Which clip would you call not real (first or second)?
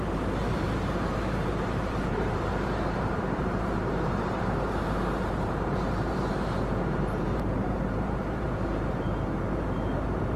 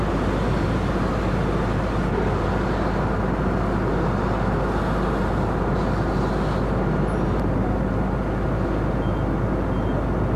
first